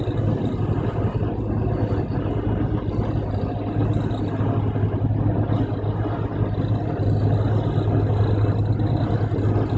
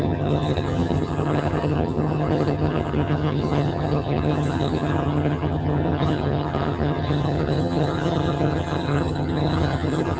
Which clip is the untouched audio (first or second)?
first